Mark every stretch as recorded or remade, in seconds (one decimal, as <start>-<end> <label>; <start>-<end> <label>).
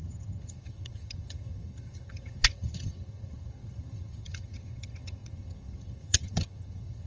0.0-7.1 remade